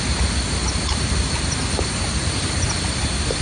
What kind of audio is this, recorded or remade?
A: recorded